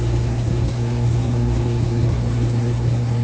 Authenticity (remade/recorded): remade